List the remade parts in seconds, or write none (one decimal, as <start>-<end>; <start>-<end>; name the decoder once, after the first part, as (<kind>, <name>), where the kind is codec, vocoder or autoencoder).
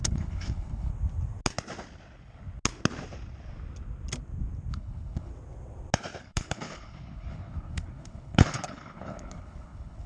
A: 0.0-0.9 (codec, HILCodec); 4.7-5.3; 6.2-10.1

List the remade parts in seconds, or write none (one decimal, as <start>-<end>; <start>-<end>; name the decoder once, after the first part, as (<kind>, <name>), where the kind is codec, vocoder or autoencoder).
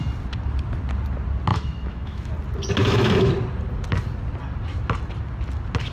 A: 1.5-2.3 (autoencoder, DAC-VAE); 2.8-3.3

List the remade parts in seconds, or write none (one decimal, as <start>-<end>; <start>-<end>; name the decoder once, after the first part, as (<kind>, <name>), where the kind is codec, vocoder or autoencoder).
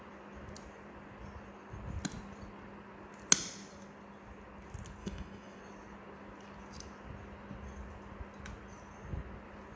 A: 5.0-5.6 (autoencoder, DAC-VAE)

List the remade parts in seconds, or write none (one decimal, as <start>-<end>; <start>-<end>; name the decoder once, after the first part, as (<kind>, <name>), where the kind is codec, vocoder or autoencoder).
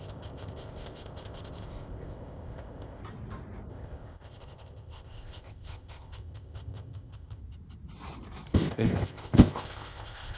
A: 0.0-3.0 (codec, ZipCodec); 3.7-7.4; 8.5-10.4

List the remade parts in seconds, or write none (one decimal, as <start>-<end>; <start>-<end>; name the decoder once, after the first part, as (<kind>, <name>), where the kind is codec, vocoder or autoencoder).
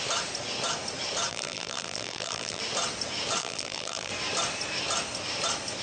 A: 1.3-2.6 (vocoder, BigVGAN v2); 3.4-4.1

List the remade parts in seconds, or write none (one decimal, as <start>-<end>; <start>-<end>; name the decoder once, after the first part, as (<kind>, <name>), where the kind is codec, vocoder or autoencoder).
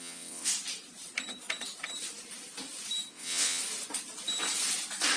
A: 0.0-0.5 (vocoder, WaveNeXt); 3.1-3.6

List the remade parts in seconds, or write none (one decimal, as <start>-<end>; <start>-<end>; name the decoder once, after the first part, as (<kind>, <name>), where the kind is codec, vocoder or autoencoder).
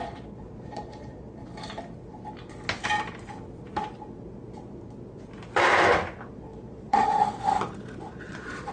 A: 0.0-1.4 (vocoder, Vocos); 6.3-7.2; 8.1-8.7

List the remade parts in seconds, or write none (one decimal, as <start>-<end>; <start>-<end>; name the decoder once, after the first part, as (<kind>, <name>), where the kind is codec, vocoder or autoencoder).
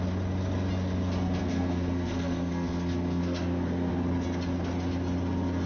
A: 1.4-3.9 (codec, SNAC)